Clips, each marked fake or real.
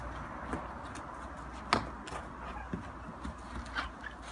real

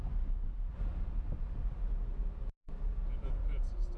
real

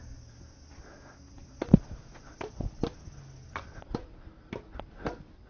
real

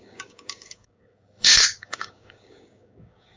fake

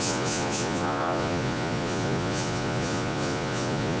fake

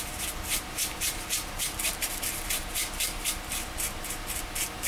fake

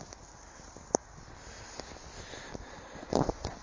fake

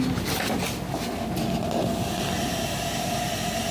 real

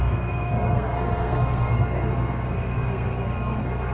fake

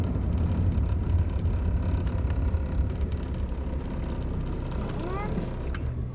real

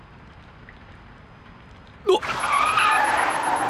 real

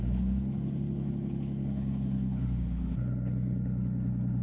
fake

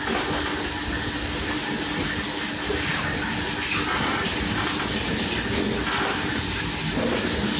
real